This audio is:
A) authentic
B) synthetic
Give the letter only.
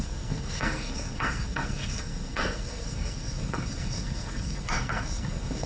B